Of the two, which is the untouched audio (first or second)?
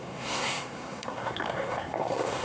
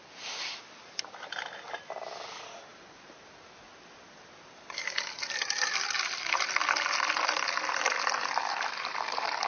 second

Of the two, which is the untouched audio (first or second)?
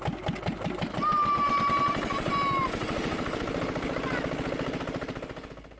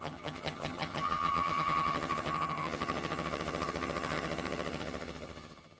first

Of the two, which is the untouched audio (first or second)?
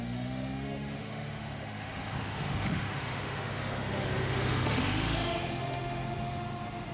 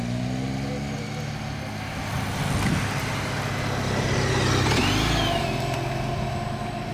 second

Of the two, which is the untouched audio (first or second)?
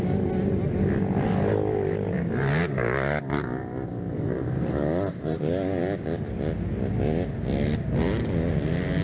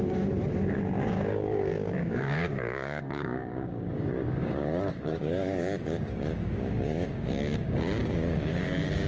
first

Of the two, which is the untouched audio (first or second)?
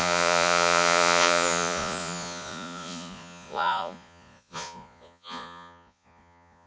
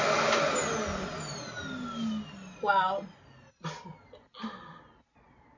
second